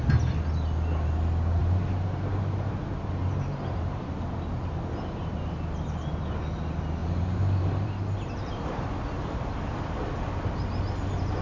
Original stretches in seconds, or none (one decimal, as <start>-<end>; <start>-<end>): 0.0-1.6; 4.1-7.0; 8.8-11.4